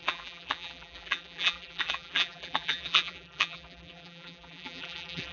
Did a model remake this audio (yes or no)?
yes